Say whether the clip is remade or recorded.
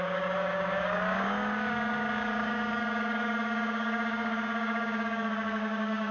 remade